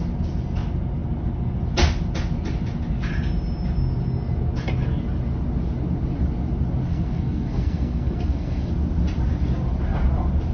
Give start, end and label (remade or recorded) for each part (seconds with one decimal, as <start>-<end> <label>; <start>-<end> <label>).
0.0-6.9 recorded; 6.9-8.7 remade; 8.7-10.5 recorded